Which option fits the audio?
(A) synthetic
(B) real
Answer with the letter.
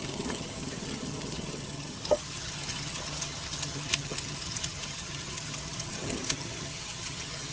A